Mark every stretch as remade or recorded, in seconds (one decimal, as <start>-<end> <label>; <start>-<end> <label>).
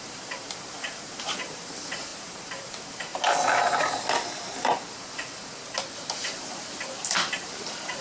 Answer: 0.0-3.1 remade; 3.1-5.8 recorded; 5.8-8.0 remade